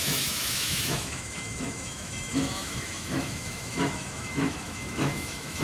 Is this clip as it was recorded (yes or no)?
no